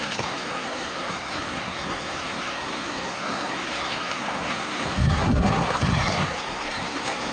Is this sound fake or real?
fake